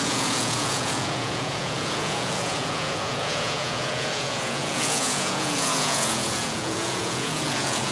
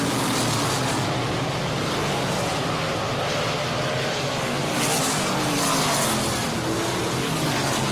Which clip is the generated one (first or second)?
first